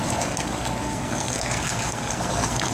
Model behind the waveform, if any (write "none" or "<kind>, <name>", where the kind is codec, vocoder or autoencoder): codec, SNAC